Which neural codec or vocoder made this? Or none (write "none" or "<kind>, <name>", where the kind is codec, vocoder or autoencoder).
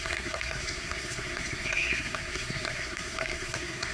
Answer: codec, SNAC